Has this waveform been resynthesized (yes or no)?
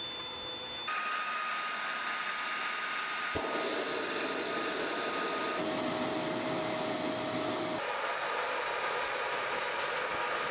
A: no